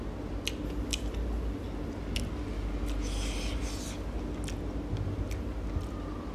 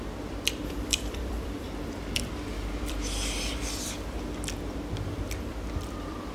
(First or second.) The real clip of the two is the first